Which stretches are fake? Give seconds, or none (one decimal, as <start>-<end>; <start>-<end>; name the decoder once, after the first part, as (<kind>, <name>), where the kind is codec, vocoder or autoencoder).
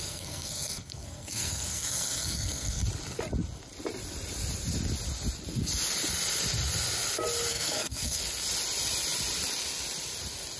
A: 0.0-2.8 (codec, SNAC); 7.5-8.2